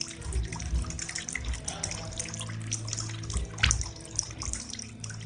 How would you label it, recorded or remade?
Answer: recorded